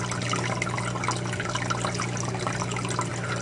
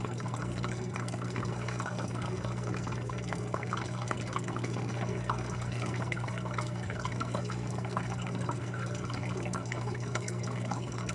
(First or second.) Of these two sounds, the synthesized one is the second